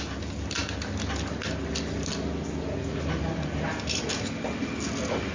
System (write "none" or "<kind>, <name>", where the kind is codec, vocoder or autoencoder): none